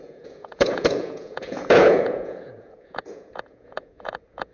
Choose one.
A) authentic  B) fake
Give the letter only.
B